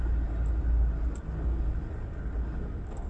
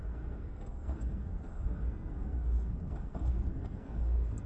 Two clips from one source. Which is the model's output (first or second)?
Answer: second